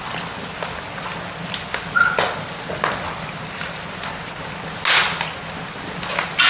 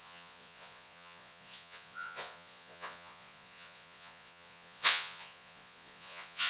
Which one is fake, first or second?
second